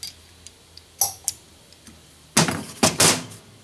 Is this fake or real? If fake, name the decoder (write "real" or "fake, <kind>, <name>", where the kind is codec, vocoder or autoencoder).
real